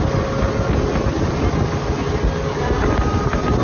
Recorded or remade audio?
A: recorded